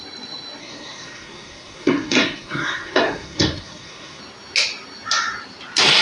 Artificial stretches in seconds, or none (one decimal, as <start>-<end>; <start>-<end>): 0.6-4.2